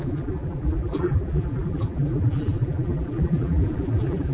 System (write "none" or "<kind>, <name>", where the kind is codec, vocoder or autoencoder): vocoder, BigVGAN v2